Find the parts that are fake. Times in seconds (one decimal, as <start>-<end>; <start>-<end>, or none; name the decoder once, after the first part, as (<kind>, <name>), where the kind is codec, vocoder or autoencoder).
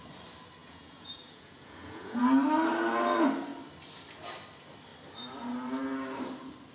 0.6-2.2 (vocoder, Vocos)